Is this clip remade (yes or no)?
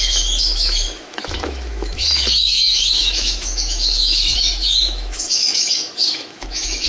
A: yes